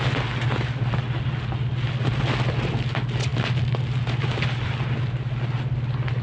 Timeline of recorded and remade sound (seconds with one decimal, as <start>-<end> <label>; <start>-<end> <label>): 0.0-6.2 recorded